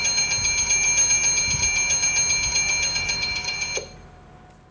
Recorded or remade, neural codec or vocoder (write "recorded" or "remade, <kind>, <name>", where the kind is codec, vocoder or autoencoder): recorded